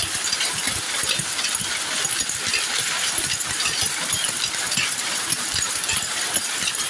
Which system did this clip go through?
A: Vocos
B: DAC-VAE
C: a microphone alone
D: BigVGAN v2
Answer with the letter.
D